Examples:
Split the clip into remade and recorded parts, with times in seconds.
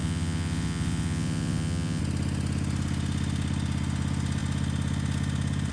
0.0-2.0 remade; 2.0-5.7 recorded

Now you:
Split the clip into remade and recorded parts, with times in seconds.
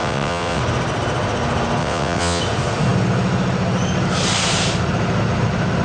0.0-0.6 remade; 0.6-1.8 recorded; 1.8-2.4 remade; 2.4-5.8 recorded